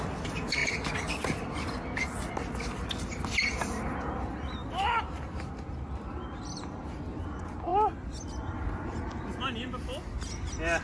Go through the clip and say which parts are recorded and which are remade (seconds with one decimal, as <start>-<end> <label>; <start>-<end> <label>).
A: 0.0-10.8 recorded